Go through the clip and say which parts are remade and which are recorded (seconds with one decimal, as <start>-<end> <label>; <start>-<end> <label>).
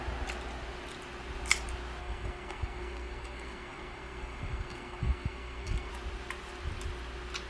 0.0-2.0 recorded; 2.0-5.9 remade; 5.9-7.5 recorded